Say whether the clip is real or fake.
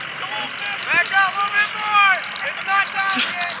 real